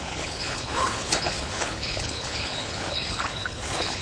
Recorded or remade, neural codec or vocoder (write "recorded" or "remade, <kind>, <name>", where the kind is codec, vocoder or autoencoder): remade, codec, HILCodec